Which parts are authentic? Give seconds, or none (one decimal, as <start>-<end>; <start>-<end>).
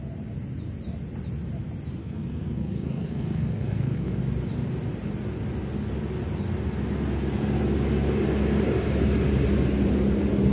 0.0-2.0; 4.2-10.5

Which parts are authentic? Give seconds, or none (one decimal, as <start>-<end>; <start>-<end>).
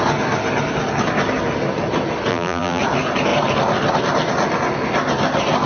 0.0-2.3; 2.8-5.7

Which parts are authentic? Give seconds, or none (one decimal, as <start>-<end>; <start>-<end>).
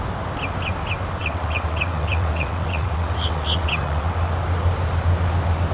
0.0-1.2; 4.2-5.7